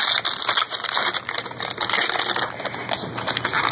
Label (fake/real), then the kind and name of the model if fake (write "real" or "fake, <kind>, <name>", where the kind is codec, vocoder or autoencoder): real